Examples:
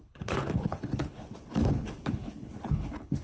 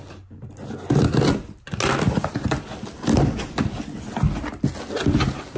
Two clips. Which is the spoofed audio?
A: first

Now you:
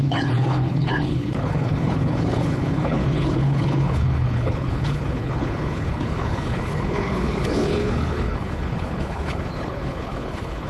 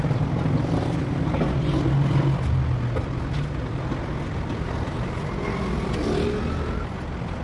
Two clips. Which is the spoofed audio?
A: first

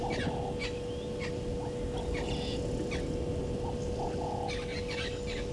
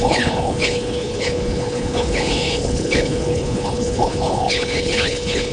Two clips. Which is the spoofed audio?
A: second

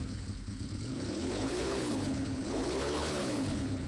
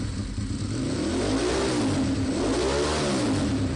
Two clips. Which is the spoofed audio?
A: first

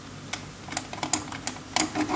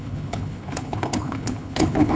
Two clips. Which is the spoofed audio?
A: second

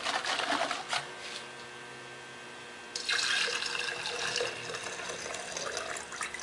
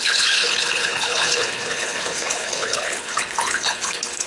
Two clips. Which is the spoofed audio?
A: second